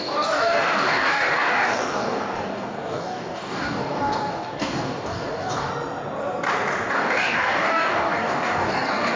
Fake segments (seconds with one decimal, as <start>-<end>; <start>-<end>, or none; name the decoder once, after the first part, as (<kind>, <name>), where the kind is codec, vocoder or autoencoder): 0.0-5.7 (codec, DAC); 6.9-9.2